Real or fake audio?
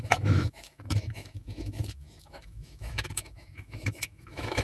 fake